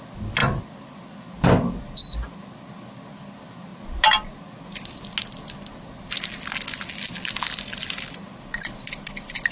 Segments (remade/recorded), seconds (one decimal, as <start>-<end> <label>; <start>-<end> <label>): 0.0-9.5 recorded